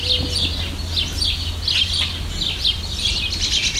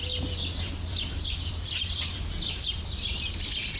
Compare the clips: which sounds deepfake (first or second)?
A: second